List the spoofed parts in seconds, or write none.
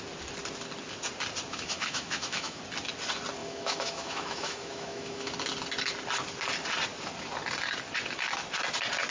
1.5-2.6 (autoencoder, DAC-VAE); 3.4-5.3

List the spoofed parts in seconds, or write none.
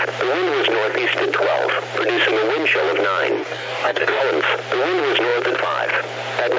3.4-4.2 (codec, DAC)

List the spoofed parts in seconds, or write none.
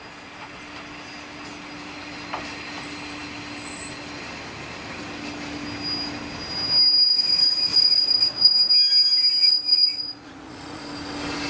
7.7-8.5 (vocoder, Vocos); 9.4-10.8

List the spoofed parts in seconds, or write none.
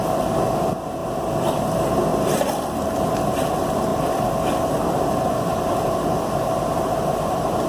2.1-3.3 (vocoder, BigVGAN v2); 3.9-5.7